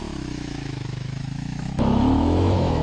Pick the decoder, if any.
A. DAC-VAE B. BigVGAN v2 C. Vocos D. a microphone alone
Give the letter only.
A